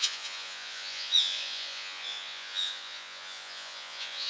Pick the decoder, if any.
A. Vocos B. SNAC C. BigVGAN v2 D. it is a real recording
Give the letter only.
A